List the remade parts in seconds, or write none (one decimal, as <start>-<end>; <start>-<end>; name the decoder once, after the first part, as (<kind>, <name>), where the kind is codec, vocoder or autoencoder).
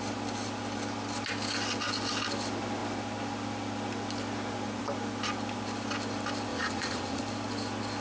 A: 6.5-7.2 (vocoder, Vocos)